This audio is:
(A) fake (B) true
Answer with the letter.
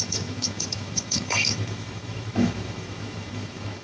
A